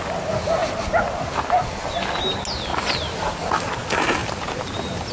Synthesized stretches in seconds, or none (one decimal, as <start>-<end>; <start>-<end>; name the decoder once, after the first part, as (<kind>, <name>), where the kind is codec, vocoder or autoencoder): 2.7-3.7 (vocoder, BigVGAN v2); 4.2-5.1